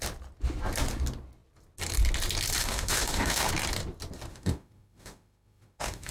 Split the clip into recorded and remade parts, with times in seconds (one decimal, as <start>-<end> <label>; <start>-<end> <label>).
0.0-2.6 recorded; 2.6-3.5 remade; 3.5-4.3 recorded; 4.3-6.1 remade